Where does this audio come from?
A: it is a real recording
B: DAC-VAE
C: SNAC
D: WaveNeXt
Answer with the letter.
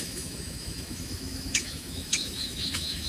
B